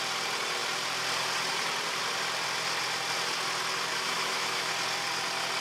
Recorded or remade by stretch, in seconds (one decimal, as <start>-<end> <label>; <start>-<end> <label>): 0.0-3.9 recorded; 3.9-4.7 remade; 4.7-5.6 recorded